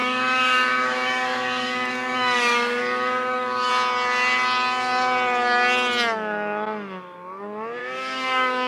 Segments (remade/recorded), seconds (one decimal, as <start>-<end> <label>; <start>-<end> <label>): 0.0-3.7 remade; 3.7-7.8 recorded; 7.8-8.7 remade